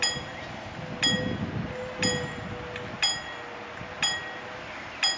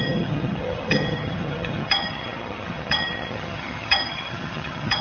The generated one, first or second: second